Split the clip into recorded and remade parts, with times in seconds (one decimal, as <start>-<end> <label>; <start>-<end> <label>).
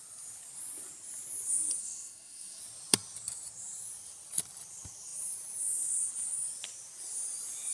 0.0-1.8 recorded; 1.8-2.6 remade; 2.6-7.7 recorded